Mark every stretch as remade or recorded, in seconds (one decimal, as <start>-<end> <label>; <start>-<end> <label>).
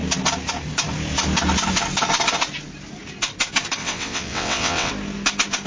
0.0-3.8 recorded; 3.8-4.9 remade; 4.9-5.7 recorded